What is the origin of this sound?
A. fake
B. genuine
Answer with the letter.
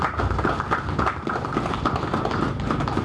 B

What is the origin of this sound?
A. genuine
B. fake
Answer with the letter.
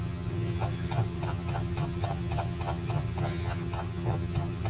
B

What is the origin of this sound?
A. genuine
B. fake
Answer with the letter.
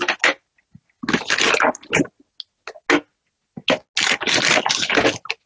A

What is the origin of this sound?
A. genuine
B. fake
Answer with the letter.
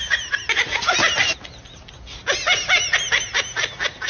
A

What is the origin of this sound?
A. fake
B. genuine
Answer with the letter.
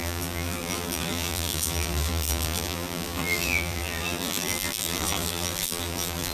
A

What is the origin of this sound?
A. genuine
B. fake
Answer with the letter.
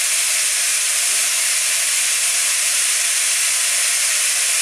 A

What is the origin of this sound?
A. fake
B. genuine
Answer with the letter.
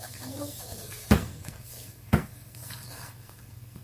A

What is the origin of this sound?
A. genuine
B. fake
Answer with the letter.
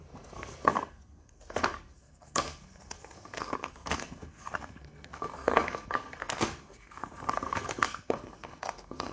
B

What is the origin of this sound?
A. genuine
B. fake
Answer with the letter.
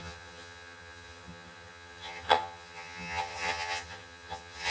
B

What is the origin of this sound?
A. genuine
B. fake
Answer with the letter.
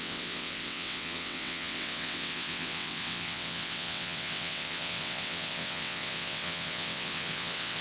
B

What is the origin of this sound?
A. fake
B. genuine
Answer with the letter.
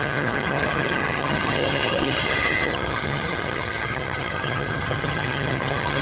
A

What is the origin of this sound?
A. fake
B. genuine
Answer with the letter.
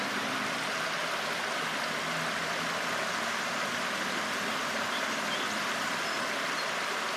B